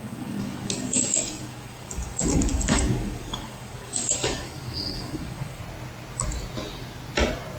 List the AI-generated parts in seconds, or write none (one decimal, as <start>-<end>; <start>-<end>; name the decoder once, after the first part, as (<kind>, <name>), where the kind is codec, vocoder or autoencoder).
0.0-5.6 (codec, DAC)